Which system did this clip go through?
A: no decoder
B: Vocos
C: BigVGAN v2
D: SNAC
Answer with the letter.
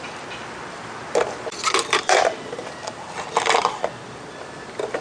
C